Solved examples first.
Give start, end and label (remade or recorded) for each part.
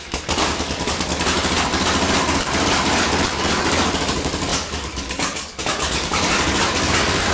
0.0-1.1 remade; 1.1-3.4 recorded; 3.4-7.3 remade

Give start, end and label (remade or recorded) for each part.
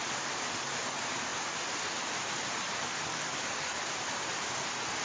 0.0-3.1 recorded; 3.1-3.8 remade; 3.8-5.0 recorded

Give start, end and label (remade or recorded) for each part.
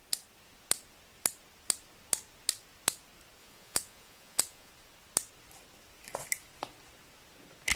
0.0-3.4 recorded; 3.4-4.7 remade; 4.7-7.8 recorded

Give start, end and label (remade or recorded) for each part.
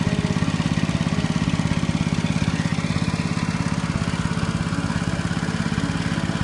0.0-6.4 recorded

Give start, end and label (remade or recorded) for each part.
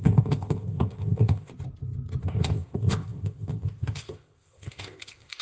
0.0-1.5 remade; 1.5-2.2 recorded; 2.2-5.4 remade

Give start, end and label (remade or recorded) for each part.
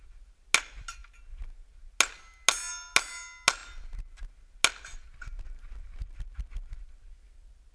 0.0-7.7 recorded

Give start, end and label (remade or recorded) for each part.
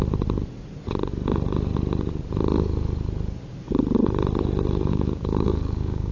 0.0-4.9 recorded; 4.9-6.1 remade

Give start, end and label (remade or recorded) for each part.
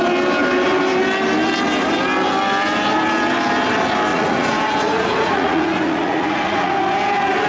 0.0-4.1 recorded; 4.1-6.8 remade; 6.8-7.5 recorded